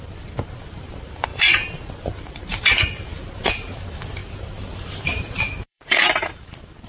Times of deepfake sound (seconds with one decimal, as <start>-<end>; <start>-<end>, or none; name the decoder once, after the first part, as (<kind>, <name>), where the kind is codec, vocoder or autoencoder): 0.0-6.9 (vocoder, BigVGAN v2)